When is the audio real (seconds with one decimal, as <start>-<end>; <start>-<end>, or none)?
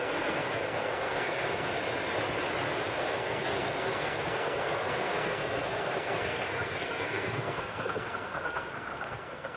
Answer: 1.8-3.0